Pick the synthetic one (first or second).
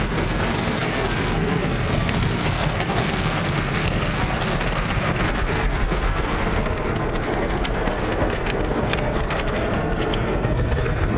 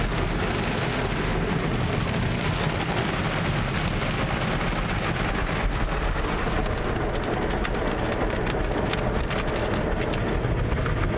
first